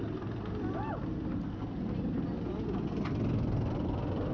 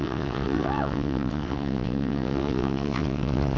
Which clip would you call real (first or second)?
first